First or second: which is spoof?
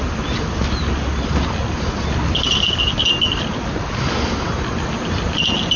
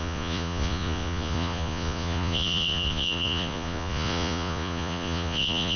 second